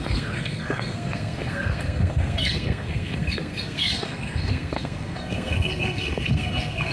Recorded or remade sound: remade